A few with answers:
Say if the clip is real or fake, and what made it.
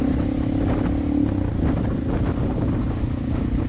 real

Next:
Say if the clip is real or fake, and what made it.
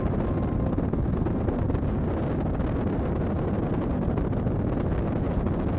real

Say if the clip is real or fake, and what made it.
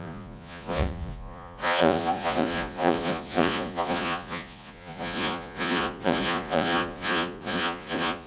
fake, vocoder, Vocos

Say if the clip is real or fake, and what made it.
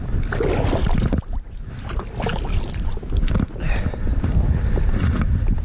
real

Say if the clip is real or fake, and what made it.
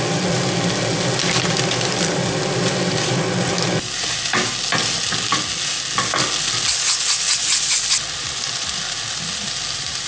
real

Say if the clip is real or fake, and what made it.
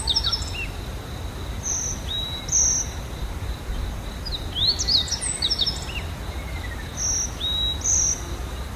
real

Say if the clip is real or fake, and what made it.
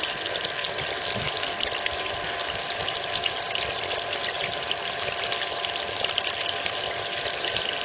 real